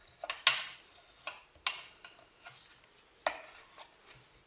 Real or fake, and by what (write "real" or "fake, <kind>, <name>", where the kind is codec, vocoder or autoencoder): real